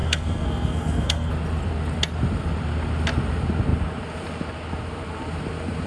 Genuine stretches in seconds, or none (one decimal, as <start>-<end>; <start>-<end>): 1.3-5.9